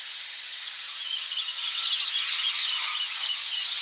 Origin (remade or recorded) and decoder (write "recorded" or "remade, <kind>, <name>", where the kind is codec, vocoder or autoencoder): remade, vocoder, HiFi-GAN